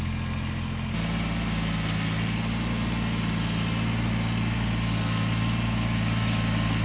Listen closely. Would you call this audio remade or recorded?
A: recorded